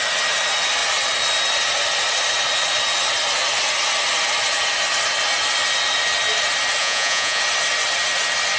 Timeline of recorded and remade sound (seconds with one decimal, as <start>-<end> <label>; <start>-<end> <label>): 0.0-6.8 recorded; 6.8-7.4 remade; 7.4-8.6 recorded